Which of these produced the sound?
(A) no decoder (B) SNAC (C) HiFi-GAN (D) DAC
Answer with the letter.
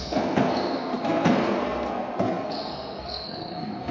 B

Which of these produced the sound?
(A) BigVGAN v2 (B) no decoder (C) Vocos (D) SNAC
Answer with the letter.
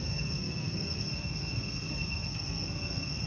D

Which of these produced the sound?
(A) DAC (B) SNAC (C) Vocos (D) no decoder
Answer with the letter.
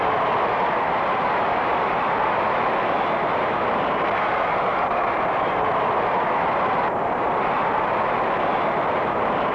D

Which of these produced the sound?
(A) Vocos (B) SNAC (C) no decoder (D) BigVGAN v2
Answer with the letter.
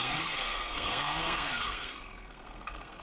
B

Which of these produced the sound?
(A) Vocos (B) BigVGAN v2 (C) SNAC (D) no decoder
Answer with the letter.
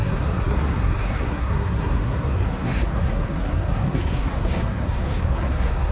C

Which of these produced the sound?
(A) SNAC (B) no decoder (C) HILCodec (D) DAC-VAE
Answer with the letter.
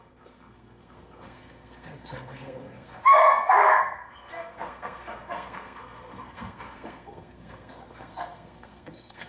A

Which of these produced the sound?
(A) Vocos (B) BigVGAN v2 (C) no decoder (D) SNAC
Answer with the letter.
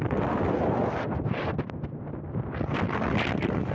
C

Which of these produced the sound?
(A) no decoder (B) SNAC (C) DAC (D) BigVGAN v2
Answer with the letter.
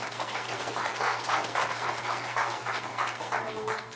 B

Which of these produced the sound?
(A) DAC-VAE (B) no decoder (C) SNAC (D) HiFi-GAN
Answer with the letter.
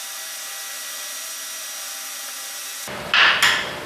B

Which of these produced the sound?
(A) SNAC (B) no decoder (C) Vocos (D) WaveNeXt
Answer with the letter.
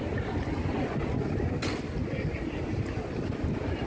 B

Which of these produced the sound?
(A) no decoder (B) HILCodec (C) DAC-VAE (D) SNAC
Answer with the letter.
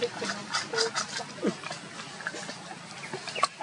A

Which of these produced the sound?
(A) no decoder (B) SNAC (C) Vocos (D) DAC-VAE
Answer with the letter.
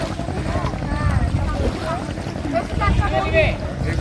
A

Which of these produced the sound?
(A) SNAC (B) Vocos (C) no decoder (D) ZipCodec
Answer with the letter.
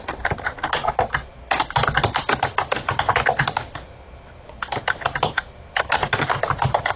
C